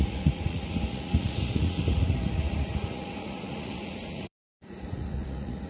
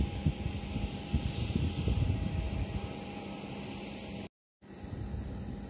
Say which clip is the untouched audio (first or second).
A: second